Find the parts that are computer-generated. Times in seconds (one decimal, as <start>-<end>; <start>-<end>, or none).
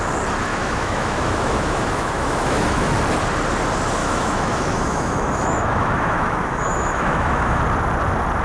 0.5-2.9; 4.0-7.6